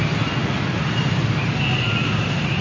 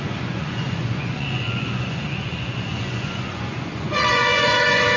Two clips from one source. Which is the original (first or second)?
first